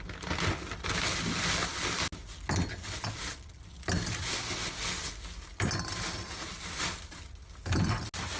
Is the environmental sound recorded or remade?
recorded